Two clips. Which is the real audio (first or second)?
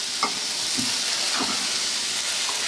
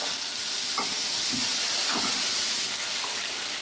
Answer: first